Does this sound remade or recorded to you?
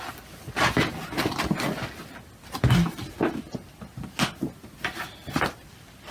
recorded